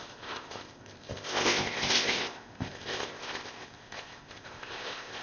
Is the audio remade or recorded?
remade